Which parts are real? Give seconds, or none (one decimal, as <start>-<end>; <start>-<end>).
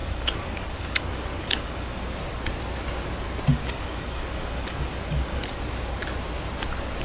2.0-3.5; 5.5-7.0